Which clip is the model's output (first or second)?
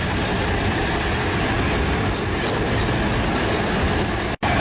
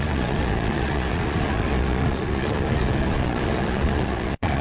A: second